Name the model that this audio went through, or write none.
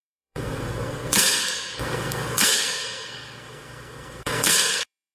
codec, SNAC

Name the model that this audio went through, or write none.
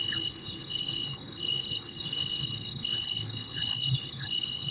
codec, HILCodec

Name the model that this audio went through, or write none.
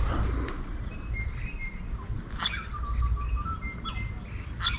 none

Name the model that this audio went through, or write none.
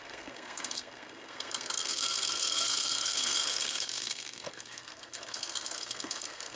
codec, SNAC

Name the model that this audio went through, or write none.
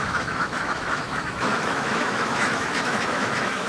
autoencoder, DAC-VAE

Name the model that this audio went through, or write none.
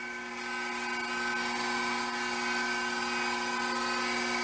none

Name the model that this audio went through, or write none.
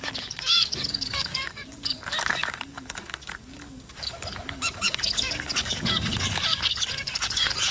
codec, DAC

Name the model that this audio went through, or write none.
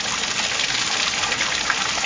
none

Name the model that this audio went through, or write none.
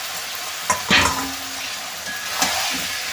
none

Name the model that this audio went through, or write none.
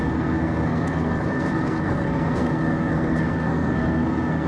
codec, SNAC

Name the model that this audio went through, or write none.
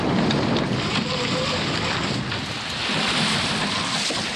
none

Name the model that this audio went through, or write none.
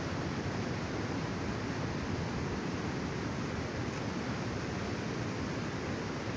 none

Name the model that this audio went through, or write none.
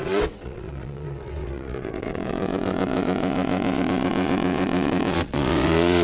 vocoder, WaveNeXt